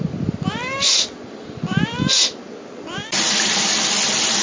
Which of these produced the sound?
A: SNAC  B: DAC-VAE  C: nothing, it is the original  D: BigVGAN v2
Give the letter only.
C